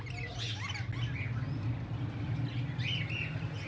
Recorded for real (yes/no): yes